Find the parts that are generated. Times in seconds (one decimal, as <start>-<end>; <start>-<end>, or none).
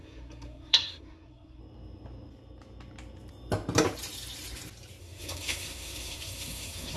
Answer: 0.0-1.6; 5.0-7.0